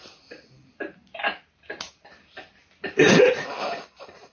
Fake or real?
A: real